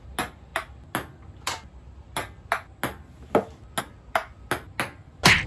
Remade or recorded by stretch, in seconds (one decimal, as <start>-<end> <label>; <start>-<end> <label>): 0.0-5.5 recorded